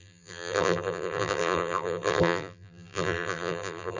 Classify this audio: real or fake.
fake